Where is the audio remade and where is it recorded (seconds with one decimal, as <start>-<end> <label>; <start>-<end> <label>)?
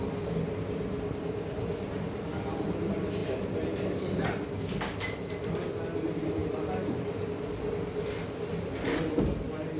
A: 0.0-9.8 recorded